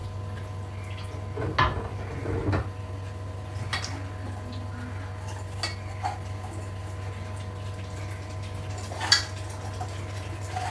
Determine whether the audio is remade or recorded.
recorded